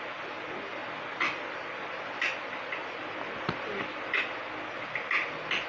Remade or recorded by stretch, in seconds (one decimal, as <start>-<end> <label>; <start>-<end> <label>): 0.0-5.7 recorded